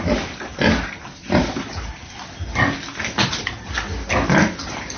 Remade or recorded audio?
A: recorded